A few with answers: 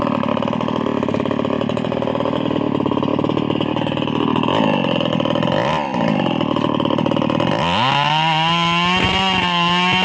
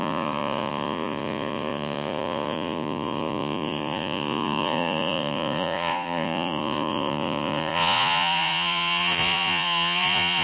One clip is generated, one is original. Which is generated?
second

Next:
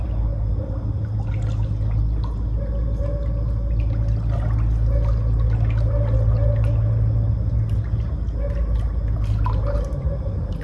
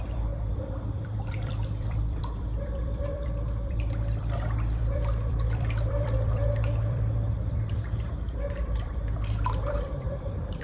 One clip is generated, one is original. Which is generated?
second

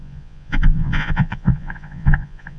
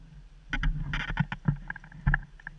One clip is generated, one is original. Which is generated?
first